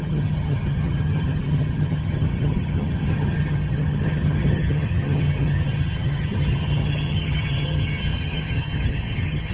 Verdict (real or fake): fake